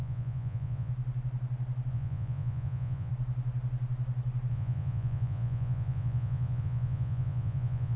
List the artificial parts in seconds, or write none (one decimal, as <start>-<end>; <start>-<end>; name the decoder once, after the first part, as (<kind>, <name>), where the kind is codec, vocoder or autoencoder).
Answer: 0.0-0.9 (vocoder, Vocos); 1.9-3.1; 4.5-8.0